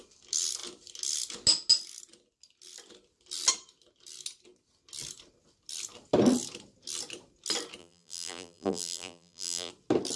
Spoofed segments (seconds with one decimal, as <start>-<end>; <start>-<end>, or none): 7.8-9.7